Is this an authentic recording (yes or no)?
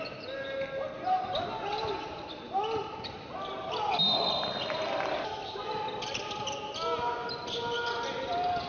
yes